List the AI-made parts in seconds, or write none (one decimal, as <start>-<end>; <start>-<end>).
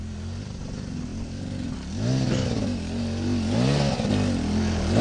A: none